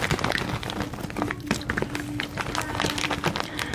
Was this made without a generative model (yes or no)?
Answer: yes